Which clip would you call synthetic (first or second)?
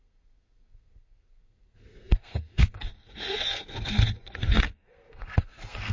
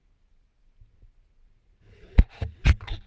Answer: first